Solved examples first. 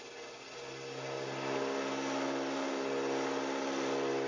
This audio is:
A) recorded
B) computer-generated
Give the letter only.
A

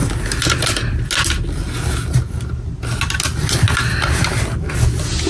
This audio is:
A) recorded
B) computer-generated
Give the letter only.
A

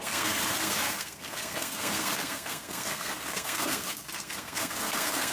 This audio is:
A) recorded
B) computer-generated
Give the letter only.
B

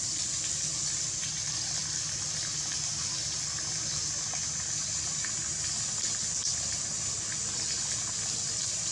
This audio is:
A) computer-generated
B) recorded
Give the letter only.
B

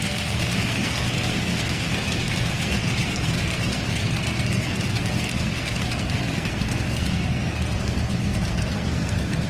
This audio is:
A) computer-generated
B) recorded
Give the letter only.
A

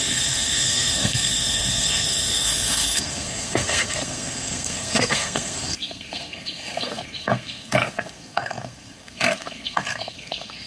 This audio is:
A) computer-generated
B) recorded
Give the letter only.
A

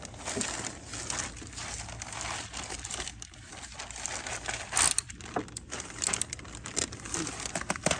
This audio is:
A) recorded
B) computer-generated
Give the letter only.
A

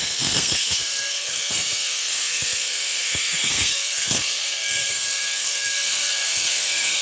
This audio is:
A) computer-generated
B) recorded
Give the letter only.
A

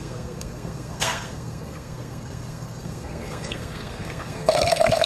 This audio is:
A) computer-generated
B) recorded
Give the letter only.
A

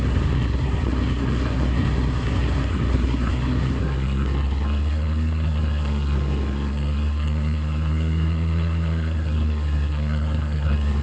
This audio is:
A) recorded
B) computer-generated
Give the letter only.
B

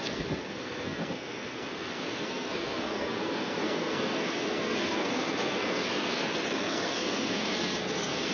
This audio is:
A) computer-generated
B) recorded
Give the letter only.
A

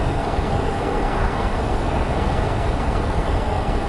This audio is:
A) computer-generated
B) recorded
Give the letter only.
A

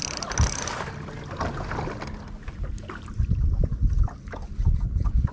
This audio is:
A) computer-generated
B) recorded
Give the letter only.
B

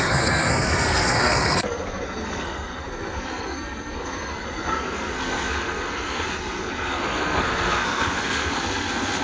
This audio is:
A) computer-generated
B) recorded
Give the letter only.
A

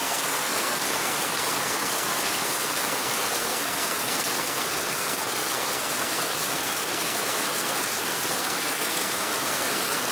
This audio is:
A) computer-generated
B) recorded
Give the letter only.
A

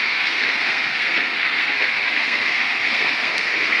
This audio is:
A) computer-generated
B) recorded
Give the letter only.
A